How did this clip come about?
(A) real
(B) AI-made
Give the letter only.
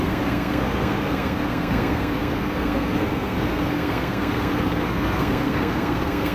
B